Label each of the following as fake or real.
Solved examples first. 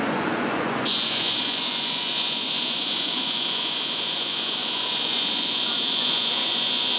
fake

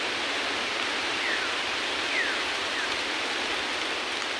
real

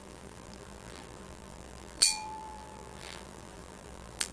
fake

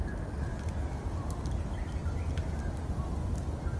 real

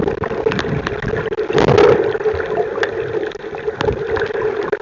real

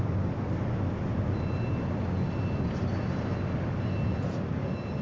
real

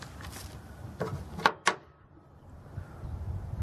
real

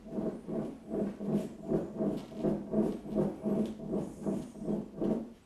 real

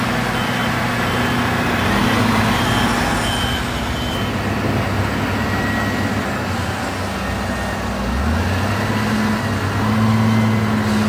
real